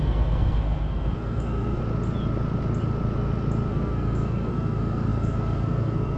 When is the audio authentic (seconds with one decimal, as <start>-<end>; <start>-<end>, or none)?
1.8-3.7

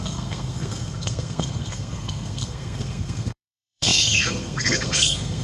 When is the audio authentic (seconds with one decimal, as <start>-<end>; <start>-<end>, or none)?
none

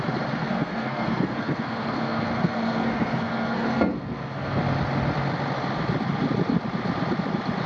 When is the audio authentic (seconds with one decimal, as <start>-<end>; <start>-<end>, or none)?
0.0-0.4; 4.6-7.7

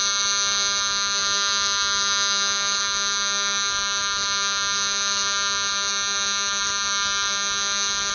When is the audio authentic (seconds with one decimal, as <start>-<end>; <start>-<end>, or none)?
0.0-8.1